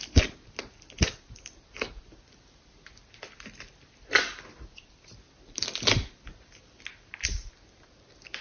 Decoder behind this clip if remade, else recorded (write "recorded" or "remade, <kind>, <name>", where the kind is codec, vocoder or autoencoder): recorded